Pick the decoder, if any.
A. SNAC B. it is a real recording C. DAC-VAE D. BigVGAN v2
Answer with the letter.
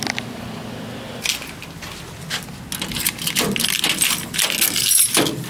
B